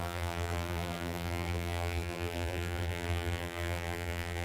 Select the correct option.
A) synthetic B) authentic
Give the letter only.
A